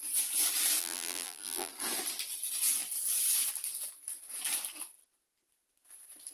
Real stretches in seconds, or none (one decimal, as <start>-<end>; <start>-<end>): 0.0-0.8; 1.7-6.3